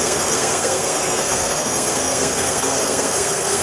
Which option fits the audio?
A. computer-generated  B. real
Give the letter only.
A